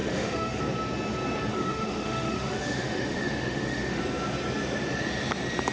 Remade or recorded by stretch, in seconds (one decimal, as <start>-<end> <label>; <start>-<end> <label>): 0.0-0.6 remade; 0.6-1.5 recorded; 1.5-4.0 remade; 4.0-5.7 recorded